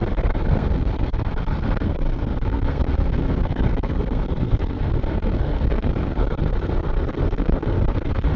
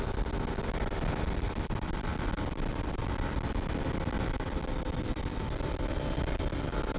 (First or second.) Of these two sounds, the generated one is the first